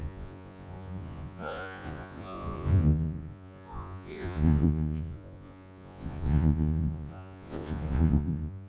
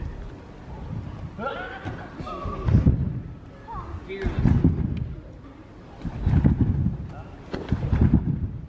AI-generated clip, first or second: first